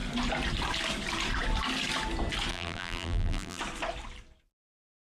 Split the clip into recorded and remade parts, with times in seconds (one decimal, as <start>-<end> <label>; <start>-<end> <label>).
0.0-2.5 recorded; 2.5-3.6 remade; 3.6-5.0 recorded